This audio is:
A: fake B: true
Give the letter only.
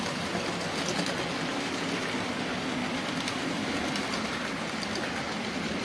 B